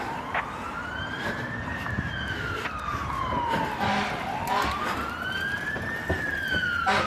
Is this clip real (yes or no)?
yes